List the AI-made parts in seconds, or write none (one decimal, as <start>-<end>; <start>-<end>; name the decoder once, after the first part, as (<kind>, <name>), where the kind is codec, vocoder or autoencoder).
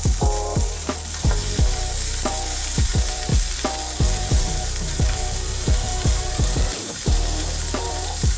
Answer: 0.0-3.3 (vocoder, BigVGAN v2); 4.2-8.4